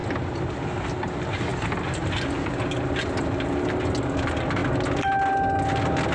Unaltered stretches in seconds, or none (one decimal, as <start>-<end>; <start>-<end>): 0.0-6.1